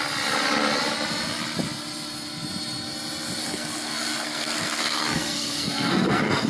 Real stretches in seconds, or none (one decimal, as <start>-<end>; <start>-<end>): 0.0-3.4